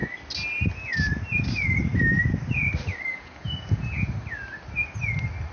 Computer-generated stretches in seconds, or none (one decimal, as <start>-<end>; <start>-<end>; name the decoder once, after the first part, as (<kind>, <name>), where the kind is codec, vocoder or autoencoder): 3.1-4.1 (vocoder, Vocos)

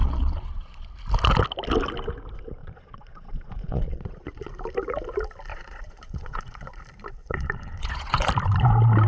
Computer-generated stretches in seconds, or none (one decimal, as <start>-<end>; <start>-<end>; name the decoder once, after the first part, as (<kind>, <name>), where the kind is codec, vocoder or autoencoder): 0.0-0.9 (vocoder, Vocos); 2.6-4.5; 5.5-6.8; 7.2-8.3

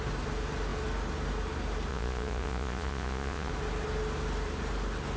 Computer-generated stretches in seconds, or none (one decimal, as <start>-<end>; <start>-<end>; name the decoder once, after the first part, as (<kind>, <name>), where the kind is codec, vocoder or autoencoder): 1.9-3.5 (vocoder, Vocos)

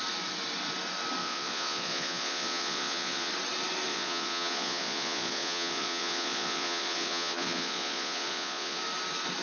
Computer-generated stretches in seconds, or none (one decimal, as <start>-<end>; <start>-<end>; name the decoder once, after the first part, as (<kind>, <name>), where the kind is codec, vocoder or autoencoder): 1.2-3.3 (vocoder, Vocos); 3.9-8.8

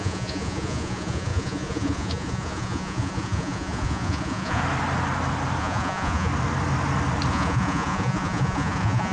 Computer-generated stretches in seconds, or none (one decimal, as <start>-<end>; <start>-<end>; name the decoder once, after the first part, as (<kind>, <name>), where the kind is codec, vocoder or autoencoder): 0.0-4.6 (vocoder, Vocos); 5.6-6.3; 7.3-9.1

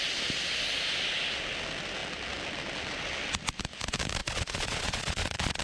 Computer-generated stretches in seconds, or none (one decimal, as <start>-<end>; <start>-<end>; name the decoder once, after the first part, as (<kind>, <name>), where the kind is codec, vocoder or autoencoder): 4.2-5.6 (vocoder, Vocos)

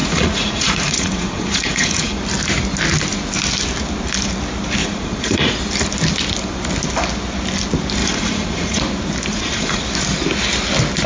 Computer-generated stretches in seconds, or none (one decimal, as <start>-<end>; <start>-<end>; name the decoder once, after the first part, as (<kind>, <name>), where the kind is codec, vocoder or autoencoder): 0.0-2.2 (vocoder, Vocos); 4.8-5.5; 8.0-8.8; 9.3-9.8

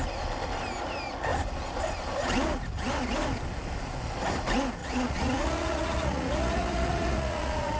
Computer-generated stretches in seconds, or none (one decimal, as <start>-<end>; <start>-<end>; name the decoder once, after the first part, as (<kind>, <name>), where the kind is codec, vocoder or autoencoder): 4.8-7.8 (vocoder, Vocos)